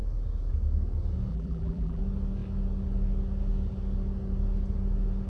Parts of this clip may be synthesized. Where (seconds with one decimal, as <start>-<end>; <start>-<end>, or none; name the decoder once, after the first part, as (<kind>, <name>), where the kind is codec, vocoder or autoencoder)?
1.3-2.0 (vocoder, BigVGAN v2)